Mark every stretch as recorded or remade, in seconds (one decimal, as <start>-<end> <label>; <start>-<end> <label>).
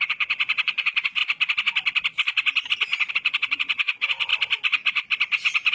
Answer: 0.0-1.2 remade; 1.2-3.1 recorded; 3.1-4.3 remade; 4.3-5.7 recorded